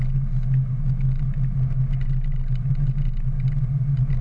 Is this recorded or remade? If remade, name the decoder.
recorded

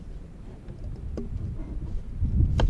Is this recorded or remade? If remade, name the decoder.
recorded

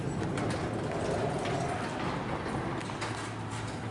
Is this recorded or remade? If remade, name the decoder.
recorded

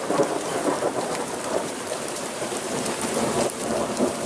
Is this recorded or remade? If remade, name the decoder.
remade, vocoder, BigVGAN v2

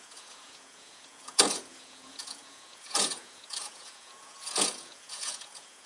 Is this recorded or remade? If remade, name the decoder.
remade, vocoder, Vocos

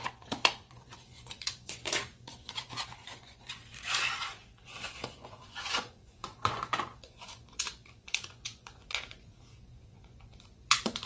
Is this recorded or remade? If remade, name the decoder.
remade, vocoder, Vocos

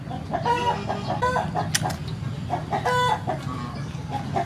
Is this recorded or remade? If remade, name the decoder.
recorded